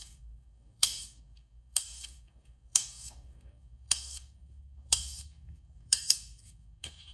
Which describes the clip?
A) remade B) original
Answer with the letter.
A